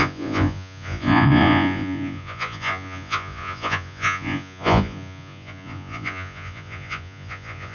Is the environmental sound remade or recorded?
remade